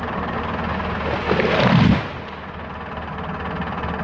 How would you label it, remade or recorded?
recorded